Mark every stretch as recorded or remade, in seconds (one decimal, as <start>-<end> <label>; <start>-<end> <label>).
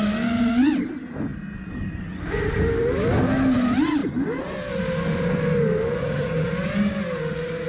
0.0-6.0 recorded; 6.0-6.5 remade; 6.5-7.7 recorded